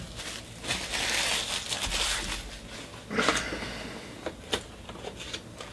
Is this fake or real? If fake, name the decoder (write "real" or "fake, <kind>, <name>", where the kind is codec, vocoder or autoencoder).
real